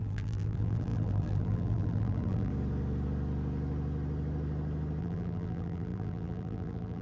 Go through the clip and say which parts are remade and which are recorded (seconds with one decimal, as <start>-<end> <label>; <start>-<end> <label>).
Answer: 0.0-2.5 remade; 2.5-5.0 recorded; 5.0-7.0 remade